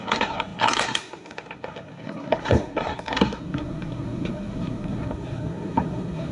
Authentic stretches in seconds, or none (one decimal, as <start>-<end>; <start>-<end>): none